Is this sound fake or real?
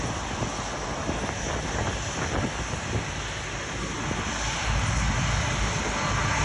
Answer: real